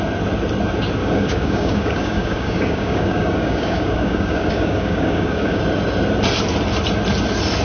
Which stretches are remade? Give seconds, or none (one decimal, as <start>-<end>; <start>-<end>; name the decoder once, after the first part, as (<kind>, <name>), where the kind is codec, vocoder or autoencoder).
1.0-5.6 (codec, DAC)